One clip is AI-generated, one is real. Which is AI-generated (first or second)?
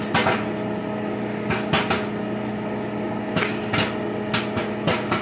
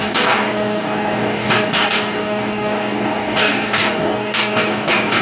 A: second